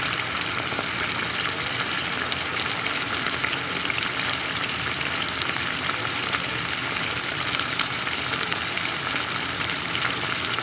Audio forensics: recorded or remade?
remade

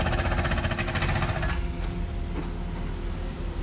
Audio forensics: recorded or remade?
recorded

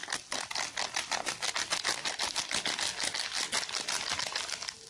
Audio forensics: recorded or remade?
recorded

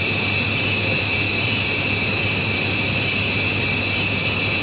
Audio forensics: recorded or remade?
recorded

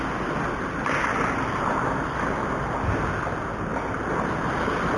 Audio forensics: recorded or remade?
recorded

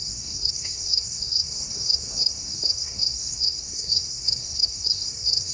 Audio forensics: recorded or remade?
remade